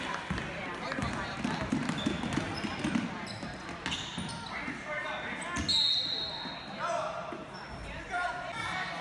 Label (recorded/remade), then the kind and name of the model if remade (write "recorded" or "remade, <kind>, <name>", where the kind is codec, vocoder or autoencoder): recorded